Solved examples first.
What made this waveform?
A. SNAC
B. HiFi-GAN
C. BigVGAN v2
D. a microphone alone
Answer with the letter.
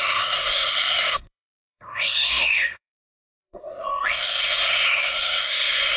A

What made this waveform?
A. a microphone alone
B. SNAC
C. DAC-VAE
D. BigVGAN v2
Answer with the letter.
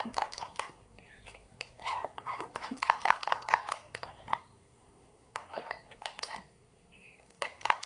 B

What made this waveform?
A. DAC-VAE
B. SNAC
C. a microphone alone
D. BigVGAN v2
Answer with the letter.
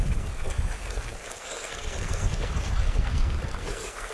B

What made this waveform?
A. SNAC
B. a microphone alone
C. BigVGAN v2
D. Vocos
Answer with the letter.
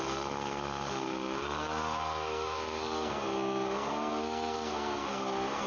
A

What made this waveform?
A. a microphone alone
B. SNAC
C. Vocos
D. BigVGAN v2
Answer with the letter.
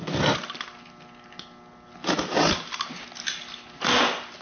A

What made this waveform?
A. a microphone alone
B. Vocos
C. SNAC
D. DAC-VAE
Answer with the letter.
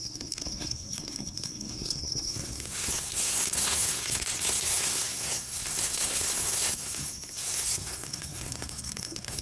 C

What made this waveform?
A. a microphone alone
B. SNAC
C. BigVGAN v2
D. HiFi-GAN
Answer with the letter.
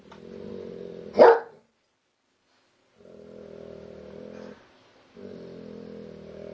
A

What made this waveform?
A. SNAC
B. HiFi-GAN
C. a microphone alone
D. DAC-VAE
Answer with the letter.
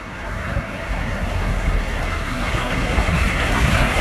A